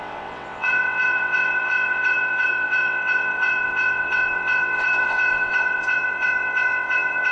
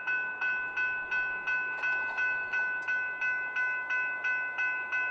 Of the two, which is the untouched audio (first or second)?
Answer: second